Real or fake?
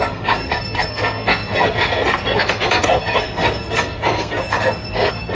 fake